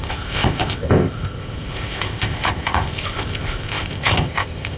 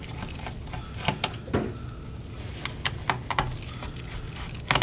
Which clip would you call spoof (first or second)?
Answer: first